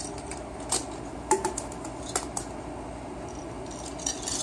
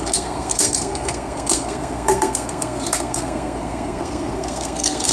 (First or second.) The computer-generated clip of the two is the second